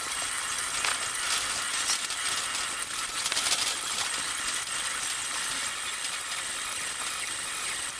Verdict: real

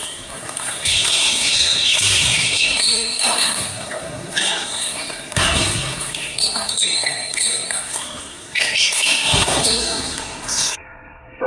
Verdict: fake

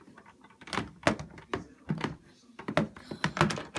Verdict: real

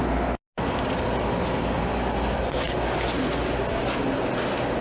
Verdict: real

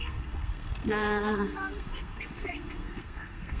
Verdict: fake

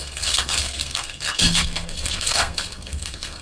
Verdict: fake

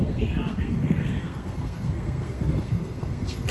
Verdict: fake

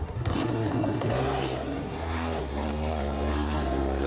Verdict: fake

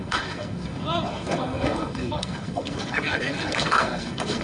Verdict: fake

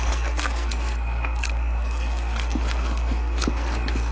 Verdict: fake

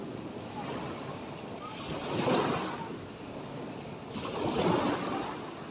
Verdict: real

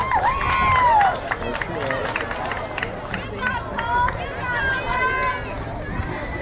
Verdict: real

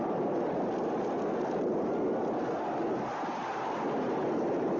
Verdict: real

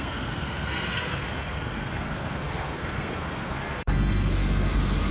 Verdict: fake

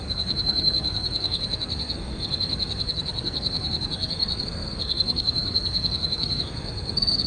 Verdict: fake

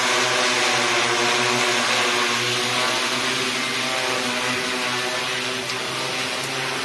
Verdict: real